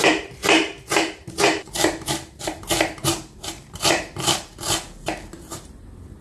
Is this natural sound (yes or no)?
no